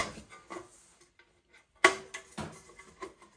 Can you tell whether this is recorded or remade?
recorded